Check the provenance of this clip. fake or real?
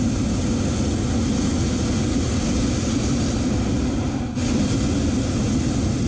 real